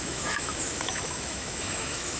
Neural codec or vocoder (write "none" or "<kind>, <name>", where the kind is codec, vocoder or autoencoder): autoencoder, DAC-VAE